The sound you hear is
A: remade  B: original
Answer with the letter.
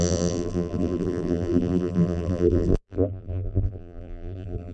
A